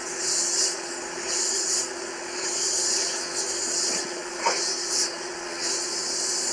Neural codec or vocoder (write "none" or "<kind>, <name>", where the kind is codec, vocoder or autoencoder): vocoder, Vocos